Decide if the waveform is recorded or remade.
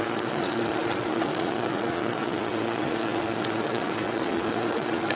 remade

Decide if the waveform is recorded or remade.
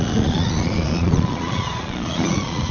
remade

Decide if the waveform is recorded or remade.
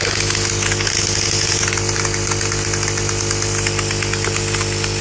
recorded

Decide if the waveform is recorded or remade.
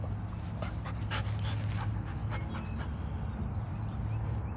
recorded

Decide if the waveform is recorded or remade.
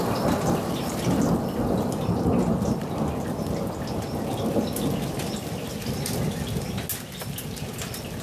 recorded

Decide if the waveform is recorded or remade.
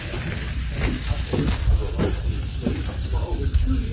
recorded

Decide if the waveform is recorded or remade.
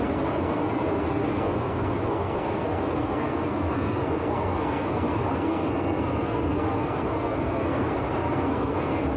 remade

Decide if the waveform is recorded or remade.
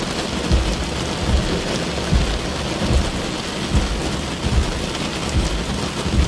recorded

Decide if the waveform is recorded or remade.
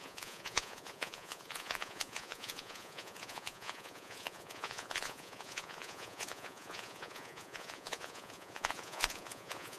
remade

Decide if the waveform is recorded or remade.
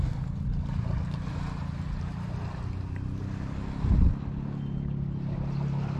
recorded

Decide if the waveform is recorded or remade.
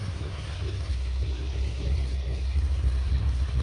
remade